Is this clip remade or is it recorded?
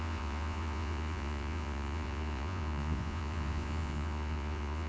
remade